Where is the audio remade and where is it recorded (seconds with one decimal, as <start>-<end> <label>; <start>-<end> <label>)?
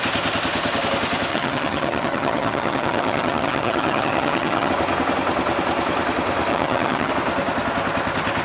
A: 0.0-1.3 recorded; 1.3-4.7 remade; 4.7-6.5 recorded; 6.5-7.1 remade; 7.1-8.4 recorded